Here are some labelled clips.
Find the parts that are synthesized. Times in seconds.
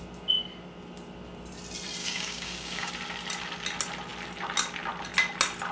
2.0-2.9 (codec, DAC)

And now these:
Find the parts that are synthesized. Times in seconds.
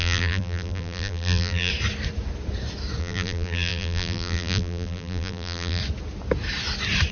0.0-1.7 (vocoder, BigVGAN v2); 3.0-5.8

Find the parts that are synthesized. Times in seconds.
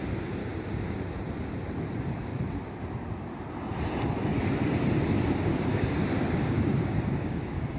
0.4-1.0 (codec, DAC); 5.5-7.8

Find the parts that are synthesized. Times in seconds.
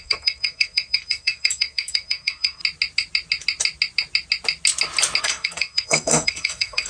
0.0-2.6 (codec, SNAC); 5.2-6.9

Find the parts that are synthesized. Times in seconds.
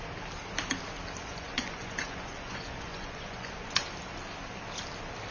1.2-3.7 (vocoder, Vocos)